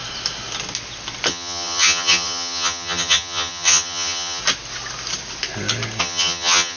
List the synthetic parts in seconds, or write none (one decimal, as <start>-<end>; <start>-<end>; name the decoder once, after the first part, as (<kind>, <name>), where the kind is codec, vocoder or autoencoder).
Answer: 1.3-4.4 (vocoder, HiFi-GAN); 6.0-6.8